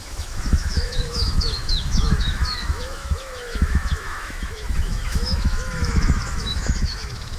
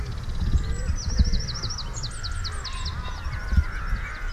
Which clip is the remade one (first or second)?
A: first